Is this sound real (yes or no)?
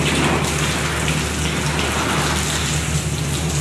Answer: yes